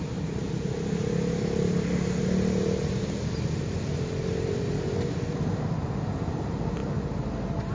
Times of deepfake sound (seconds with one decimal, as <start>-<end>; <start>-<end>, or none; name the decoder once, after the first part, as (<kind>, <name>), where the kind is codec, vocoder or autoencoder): none